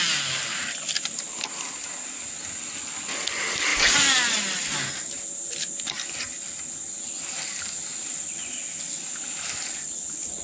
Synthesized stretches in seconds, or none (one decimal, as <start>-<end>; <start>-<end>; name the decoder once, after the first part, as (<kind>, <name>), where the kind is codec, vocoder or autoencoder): 7.9-9.0 (vocoder, BigVGAN v2)